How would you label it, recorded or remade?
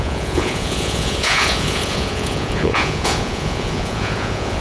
remade